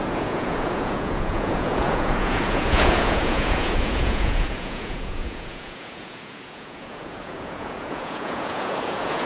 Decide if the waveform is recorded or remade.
remade